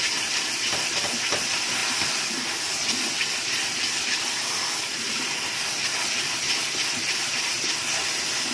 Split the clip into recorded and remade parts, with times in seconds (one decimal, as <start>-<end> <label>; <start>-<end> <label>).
0.0-8.5 recorded